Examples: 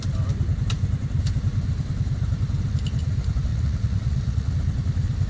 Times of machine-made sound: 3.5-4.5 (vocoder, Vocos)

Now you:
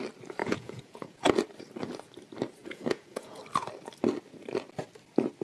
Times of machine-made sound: 0.4-1.3 (vocoder, Vocos); 2.6-3.4

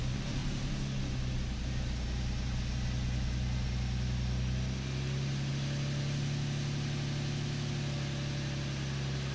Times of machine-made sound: none